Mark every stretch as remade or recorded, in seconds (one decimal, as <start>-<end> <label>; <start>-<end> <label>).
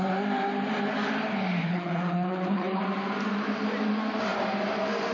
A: 0.0-1.6 recorded; 1.6-2.8 remade; 2.8-5.1 recorded